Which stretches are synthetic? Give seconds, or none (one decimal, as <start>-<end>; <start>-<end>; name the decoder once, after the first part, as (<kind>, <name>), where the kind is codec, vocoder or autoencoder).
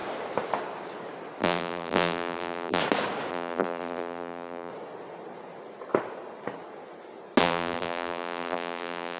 1.4-2.8 (vocoder, BigVGAN v2); 3.3-4.7; 7.4-9.2